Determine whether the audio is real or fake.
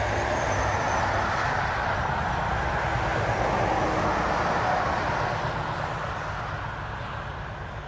real